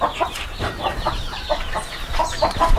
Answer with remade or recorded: remade